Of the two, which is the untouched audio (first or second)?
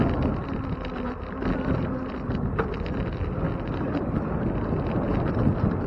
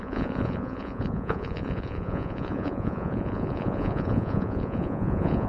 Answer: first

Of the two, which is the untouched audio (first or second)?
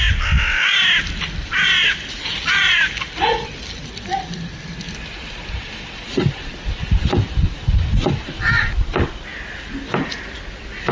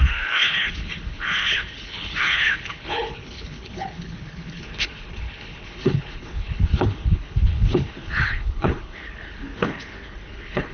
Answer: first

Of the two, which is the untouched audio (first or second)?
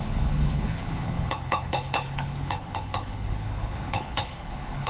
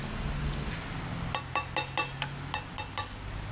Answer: second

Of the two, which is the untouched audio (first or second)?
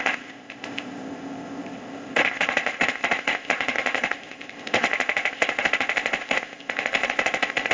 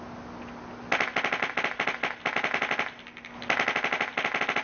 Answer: second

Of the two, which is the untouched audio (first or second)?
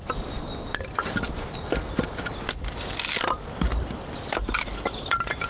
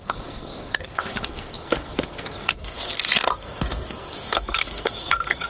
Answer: first